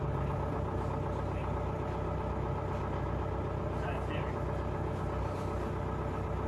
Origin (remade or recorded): recorded